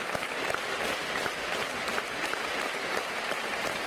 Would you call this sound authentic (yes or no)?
yes